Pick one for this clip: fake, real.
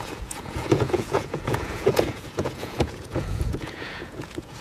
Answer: fake